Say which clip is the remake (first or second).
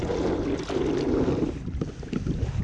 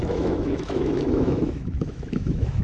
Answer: second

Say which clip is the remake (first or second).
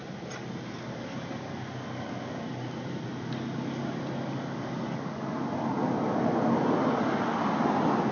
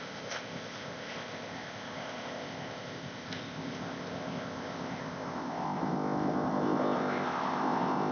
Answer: second